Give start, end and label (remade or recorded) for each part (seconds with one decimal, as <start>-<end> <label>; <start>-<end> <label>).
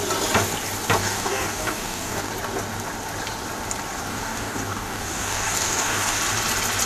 0.0-1.0 recorded; 1.0-2.3 remade; 2.3-4.1 recorded; 4.1-6.2 remade; 6.2-6.9 recorded